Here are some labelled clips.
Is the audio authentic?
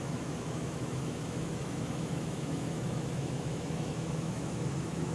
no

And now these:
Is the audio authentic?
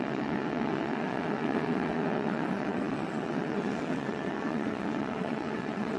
no